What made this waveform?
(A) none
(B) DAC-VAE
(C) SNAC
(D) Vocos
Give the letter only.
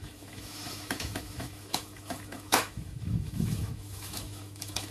B